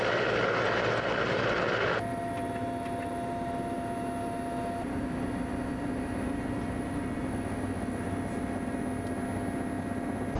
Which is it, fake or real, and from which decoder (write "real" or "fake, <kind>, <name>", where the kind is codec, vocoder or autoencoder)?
real